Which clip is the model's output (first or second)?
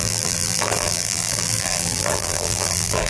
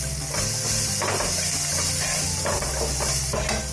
first